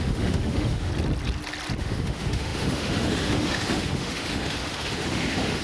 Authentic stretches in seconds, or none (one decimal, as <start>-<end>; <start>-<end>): 0.9-1.8